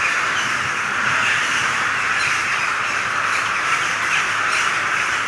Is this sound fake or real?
real